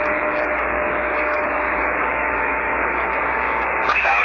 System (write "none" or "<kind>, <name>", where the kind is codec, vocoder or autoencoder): codec, DAC